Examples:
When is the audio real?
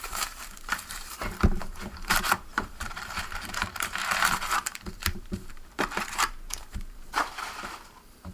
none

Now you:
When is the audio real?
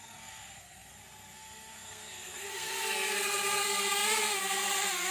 none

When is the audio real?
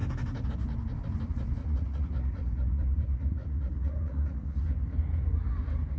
0.0-1.6; 4.6-6.0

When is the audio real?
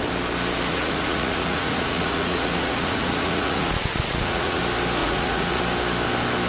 0.0-0.7; 4.6-5.0; 5.6-6.5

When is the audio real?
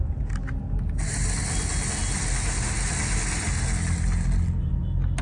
0.0-5.2